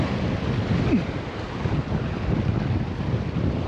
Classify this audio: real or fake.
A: real